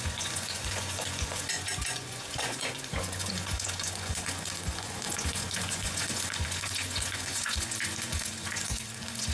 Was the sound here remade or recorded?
remade